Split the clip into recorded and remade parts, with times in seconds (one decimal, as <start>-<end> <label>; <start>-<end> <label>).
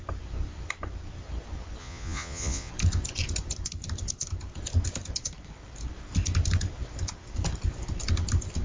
0.0-1.8 recorded; 1.8-2.7 remade; 2.7-8.6 recorded